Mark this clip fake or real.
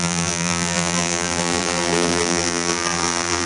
fake